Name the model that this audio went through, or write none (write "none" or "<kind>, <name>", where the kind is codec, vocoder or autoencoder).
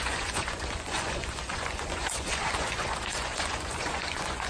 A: vocoder, Vocos